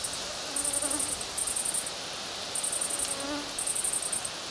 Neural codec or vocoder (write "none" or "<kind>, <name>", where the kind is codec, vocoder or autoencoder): none